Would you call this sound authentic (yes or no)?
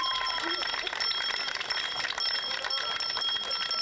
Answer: yes